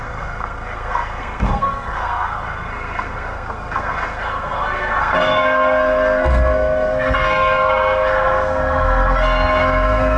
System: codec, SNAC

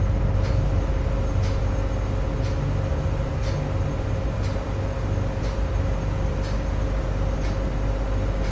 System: none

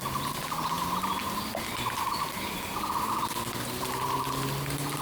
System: none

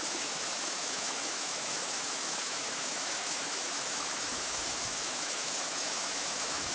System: autoencoder, DAC-VAE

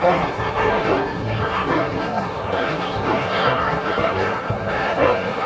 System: codec, SNAC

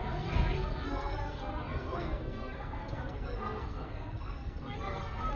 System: codec, SNAC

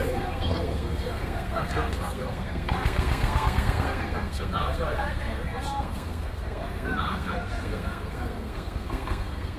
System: codec, SNAC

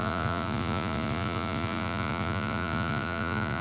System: vocoder, Vocos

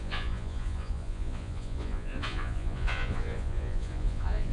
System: vocoder, Vocos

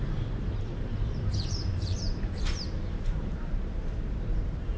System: vocoder, BigVGAN v2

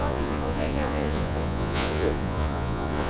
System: vocoder, Vocos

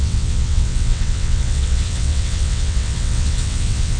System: vocoder, WaveNeXt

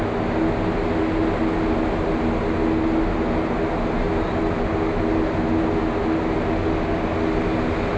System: none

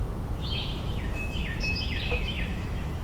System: autoencoder, DAC-VAE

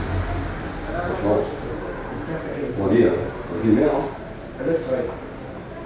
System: none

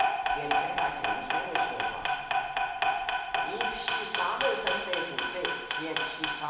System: none